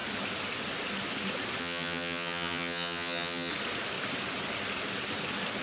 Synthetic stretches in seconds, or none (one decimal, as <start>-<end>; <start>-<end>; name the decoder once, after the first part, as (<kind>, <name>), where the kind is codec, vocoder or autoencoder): 1.6-3.5 (vocoder, HiFi-GAN)